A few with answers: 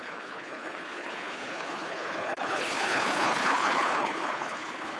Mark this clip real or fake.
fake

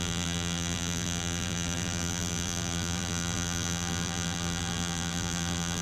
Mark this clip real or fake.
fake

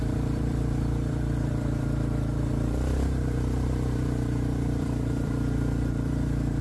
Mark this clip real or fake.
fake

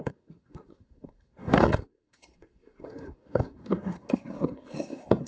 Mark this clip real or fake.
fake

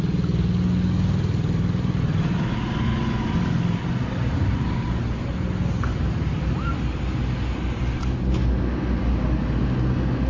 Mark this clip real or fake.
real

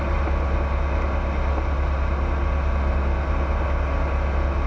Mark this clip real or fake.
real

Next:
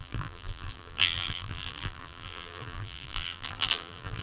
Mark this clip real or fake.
fake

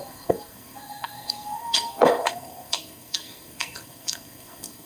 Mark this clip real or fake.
fake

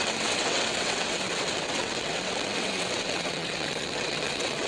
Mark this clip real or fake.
fake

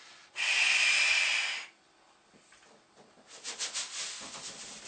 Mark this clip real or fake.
real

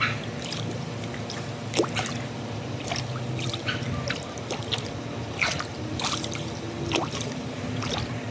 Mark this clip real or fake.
real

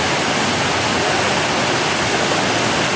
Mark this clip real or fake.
real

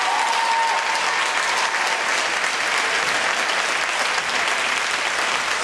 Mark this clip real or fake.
real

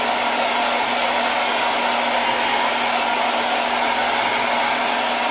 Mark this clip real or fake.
real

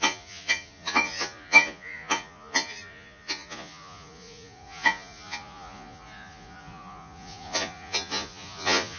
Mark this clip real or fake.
fake